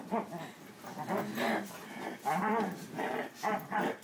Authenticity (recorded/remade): recorded